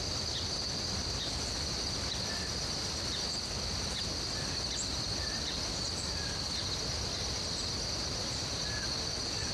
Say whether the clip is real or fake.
real